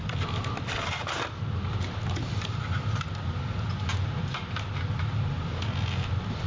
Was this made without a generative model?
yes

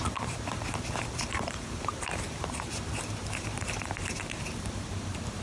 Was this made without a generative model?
no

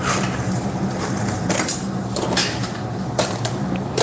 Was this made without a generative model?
no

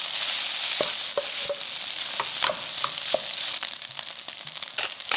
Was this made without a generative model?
yes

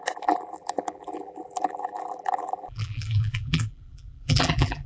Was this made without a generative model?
no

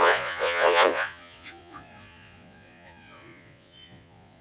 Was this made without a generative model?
no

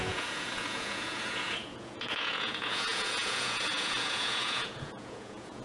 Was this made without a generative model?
no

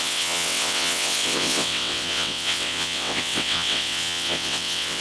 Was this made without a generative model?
no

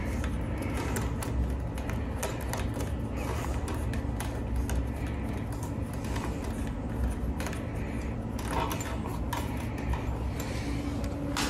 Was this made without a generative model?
yes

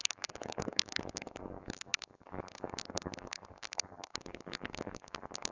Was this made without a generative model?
no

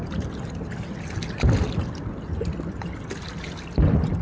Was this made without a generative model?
yes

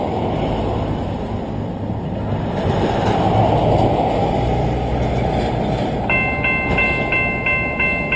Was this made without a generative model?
yes